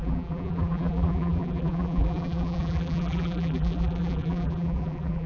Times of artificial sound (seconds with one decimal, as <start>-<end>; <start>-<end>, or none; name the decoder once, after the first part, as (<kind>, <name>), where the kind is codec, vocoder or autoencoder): 0.0-5.3 (vocoder, BigVGAN v2)